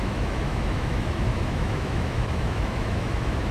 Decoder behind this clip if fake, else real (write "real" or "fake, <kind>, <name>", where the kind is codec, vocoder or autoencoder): fake, autoencoder, DAC-VAE